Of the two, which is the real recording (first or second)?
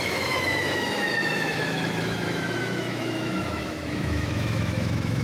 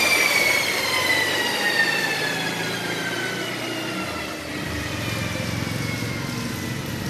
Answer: second